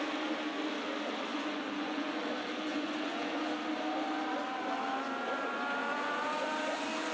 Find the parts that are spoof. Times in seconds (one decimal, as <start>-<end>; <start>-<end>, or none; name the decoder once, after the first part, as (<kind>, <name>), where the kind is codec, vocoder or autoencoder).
1.3-2.2 (vocoder, Vocos); 2.7-3.4; 5.8-6.5

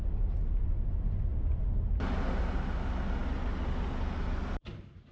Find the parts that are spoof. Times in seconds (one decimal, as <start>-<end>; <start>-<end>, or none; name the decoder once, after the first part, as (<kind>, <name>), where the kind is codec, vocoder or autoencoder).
none

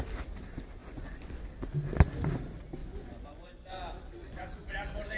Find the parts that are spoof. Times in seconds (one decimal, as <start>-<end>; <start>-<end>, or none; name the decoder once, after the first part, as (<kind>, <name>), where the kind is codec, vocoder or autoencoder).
0.8-1.4 (vocoder, Vocos); 2.8-3.8; 4.2-5.2

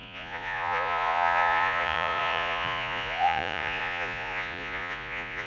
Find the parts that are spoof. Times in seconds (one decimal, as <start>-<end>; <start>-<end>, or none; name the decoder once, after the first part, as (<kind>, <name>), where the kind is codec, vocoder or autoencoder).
0.0-5.5 (vocoder, Vocos)